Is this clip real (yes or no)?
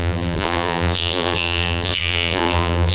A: no